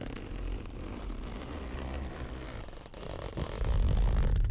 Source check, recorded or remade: recorded